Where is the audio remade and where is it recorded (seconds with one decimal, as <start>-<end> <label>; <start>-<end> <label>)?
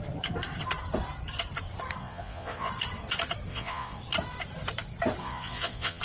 0.0-2.0 recorded; 2.0-2.7 remade; 2.7-3.5 recorded; 3.5-4.0 remade; 4.0-5.2 recorded; 5.2-6.0 remade